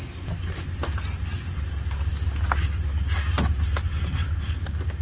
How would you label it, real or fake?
real